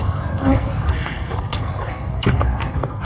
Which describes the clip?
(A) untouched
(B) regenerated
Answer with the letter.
B